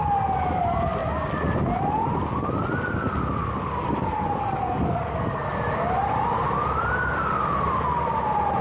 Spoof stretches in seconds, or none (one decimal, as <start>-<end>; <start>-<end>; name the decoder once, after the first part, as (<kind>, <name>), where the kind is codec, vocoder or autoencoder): 3.4-5.6 (codec, DAC)